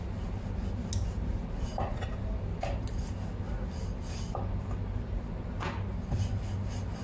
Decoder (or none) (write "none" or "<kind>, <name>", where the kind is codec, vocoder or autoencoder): none